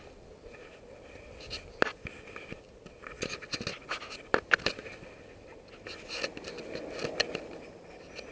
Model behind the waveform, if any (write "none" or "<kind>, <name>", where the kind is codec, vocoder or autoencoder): none